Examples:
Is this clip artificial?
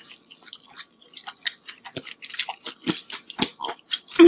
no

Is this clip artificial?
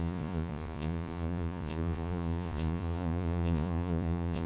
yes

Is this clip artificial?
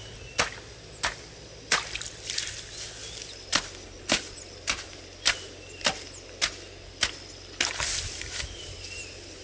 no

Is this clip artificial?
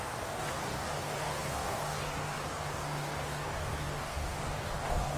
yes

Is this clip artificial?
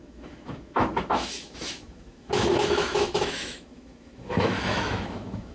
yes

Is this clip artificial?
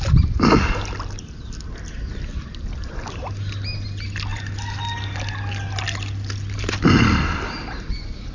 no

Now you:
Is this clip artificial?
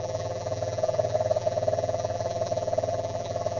yes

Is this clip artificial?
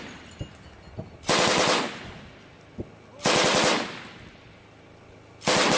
no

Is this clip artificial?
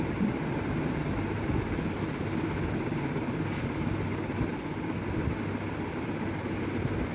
no